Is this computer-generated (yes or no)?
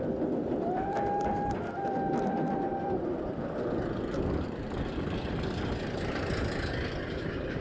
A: yes